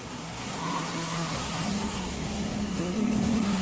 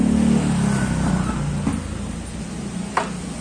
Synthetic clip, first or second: first